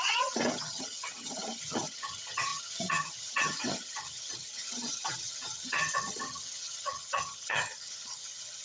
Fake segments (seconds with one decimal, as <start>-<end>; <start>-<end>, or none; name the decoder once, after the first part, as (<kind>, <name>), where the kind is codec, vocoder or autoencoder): 0.0-8.6 (vocoder, HiFi-GAN)